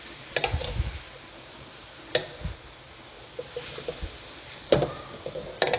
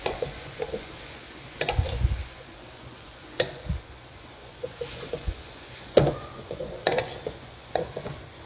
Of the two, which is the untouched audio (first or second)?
first